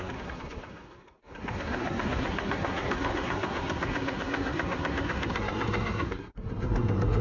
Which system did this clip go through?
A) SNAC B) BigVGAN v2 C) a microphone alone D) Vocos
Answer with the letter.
A